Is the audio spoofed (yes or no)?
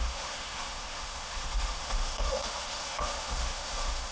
yes